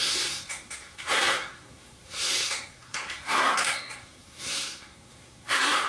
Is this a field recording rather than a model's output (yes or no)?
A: no